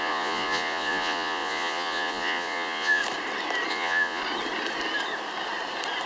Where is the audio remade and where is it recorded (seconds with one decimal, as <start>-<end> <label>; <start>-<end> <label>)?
0.0-3.0 remade; 3.0-3.7 recorded; 3.7-4.2 remade; 4.2-6.1 recorded

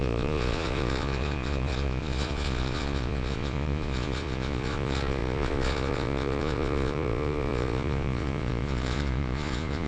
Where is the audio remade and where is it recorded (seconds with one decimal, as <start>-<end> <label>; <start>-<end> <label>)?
0.0-9.9 remade